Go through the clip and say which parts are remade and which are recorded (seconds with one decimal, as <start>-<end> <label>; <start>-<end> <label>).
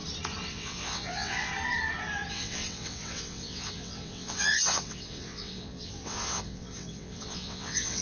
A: 0.0-0.5 recorded; 0.5-1.5 remade; 1.5-2.3 recorded; 2.3-8.0 remade